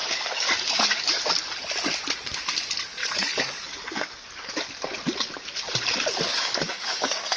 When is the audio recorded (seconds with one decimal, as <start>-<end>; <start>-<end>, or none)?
1.2-3.0; 4.3-6.3